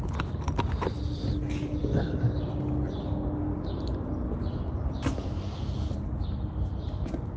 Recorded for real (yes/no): yes